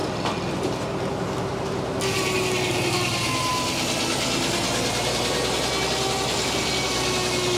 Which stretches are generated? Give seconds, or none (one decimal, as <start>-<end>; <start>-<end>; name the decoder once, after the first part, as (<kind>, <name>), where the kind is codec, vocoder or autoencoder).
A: 0.0-0.8 (vocoder, BigVGAN v2)

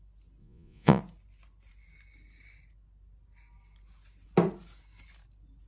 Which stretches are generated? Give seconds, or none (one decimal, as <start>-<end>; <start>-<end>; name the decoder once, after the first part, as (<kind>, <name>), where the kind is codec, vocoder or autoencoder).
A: 0.4-1.0 (vocoder, Vocos)

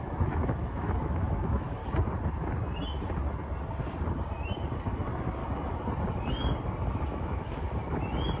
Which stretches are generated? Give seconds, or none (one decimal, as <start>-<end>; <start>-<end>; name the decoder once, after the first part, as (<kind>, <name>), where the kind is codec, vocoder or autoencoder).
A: 0.0-1.8 (autoencoder, DAC-VAE); 4.9-5.4; 7.1-7.6

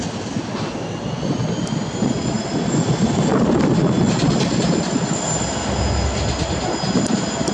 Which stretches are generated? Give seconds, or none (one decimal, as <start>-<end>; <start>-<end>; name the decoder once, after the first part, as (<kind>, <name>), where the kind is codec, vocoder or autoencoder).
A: none

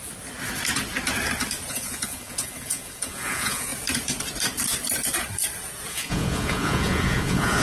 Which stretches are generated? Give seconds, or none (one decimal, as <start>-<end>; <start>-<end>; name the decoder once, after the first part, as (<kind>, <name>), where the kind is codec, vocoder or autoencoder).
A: 1.7-3.7 (vocoder, Vocos); 5.9-7.6

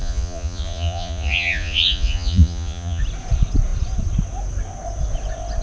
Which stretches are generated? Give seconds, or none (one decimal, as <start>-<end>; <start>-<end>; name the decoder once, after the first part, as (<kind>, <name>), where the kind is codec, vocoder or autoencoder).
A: 0.0-3.0 (vocoder, Vocos)

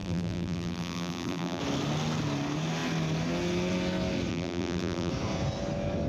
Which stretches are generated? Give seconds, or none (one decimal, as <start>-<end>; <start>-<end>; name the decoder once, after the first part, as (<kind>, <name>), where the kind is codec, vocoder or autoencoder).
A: 0.0-1.6 (vocoder, BigVGAN v2); 4.3-5.1

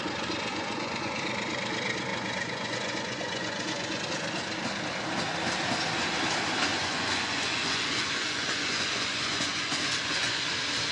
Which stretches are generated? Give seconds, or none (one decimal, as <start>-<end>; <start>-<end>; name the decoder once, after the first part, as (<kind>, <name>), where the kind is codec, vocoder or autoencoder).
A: 0.5-1.2 (vocoder, Vocos); 2.1-4.0; 6.7-10.5